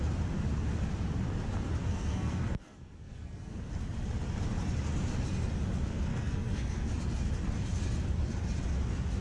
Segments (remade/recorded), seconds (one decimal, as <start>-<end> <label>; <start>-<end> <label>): 0.0-1.8 recorded; 1.8-3.7 remade; 3.7-6.1 recorded; 6.1-6.9 remade; 6.9-9.2 recorded